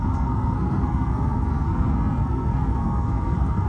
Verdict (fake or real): fake